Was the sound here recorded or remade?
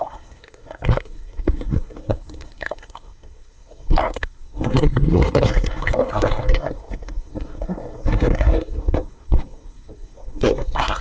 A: remade